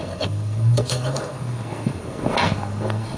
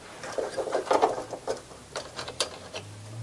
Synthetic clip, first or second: first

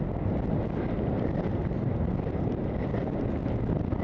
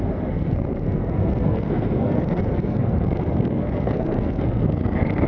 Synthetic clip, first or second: second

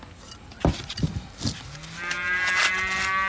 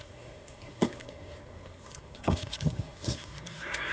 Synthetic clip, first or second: second